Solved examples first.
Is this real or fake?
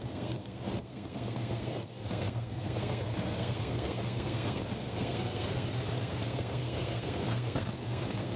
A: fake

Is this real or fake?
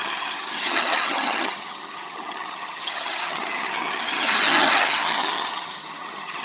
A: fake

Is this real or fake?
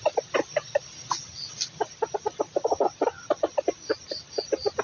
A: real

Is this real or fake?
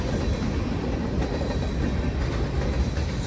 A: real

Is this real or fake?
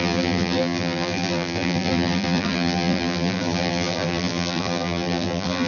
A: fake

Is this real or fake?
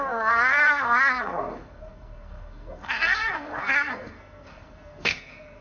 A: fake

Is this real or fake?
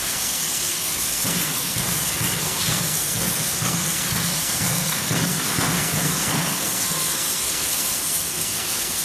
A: fake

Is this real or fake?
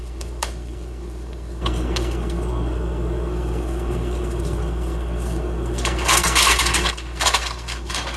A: fake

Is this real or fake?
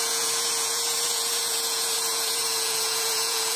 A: fake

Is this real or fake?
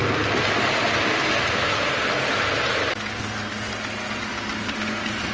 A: real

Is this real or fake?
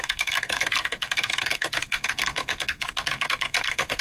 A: fake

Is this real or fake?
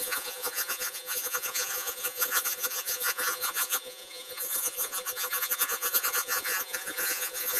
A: fake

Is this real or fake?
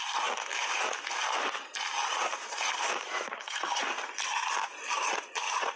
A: real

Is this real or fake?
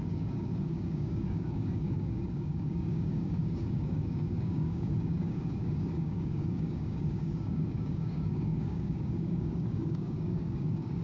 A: fake